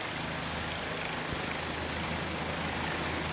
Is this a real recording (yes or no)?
yes